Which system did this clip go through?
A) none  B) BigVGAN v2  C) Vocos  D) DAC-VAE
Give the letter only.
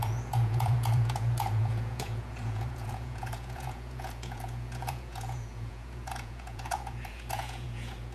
C